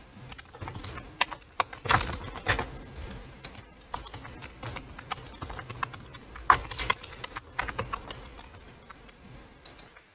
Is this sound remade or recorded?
recorded